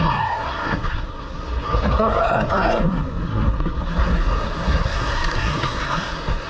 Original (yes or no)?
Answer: no